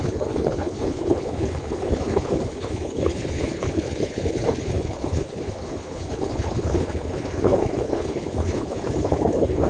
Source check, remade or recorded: remade